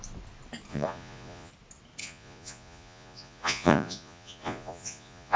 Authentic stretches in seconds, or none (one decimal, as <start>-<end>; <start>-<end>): 0.0-0.7; 1.5-2.0